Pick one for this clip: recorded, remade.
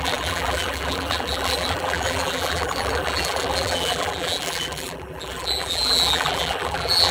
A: remade